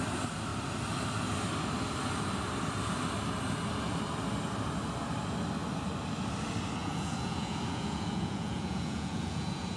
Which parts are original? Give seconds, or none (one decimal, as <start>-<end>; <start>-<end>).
0.0-6.8